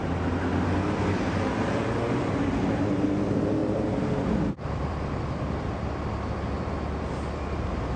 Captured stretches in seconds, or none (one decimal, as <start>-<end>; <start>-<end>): 0.0-3.6; 5.9-8.0